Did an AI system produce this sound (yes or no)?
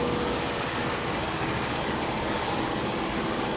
yes